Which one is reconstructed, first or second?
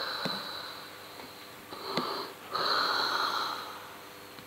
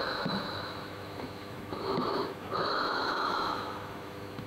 second